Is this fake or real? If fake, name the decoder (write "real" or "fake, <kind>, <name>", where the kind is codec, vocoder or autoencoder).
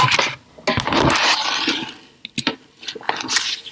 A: real